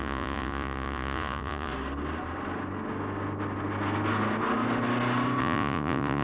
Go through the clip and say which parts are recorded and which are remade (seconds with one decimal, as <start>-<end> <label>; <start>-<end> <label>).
0.0-1.7 remade; 1.7-5.4 recorded; 5.4-6.2 remade